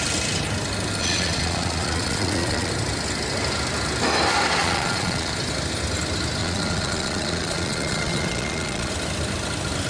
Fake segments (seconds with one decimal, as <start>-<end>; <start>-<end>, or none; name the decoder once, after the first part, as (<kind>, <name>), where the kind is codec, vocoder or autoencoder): 1.0-2.7 (vocoder, Vocos); 4.6-5.3; 6.4-8.9